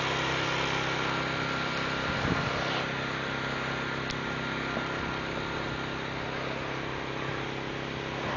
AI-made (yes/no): no